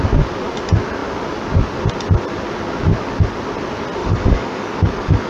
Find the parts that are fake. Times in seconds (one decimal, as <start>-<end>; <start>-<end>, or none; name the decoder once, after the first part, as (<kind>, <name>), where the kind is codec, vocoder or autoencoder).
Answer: 4.0-5.3 (codec, DAC)

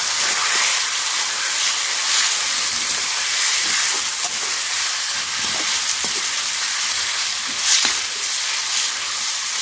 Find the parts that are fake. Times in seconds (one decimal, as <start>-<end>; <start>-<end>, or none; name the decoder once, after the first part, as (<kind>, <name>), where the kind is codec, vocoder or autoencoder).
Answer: none

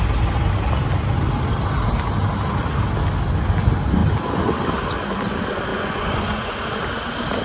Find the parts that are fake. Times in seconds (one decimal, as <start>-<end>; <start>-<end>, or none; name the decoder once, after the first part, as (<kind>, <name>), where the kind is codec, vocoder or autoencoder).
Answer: 5.7-6.8 (vocoder, Vocos)

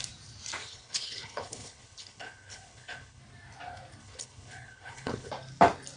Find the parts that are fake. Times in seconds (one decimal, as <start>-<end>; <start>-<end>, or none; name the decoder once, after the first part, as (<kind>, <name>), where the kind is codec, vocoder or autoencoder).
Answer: 0.6-3.2 (codec, HILCodec); 4.0-5.3

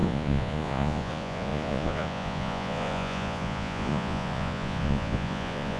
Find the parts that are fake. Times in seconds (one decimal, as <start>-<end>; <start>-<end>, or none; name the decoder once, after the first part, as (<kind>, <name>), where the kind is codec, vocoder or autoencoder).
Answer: 0.0-5.8 (vocoder, Vocos)

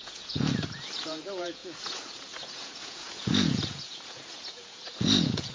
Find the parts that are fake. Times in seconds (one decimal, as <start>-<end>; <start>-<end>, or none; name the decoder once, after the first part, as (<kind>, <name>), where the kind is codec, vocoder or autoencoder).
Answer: 0.0-5.5 (vocoder, Vocos)

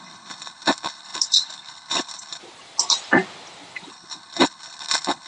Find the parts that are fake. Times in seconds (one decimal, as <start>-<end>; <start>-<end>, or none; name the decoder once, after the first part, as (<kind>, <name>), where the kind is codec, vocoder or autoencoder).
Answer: 0.0-2.4 (codec, HILCodec); 3.9-5.3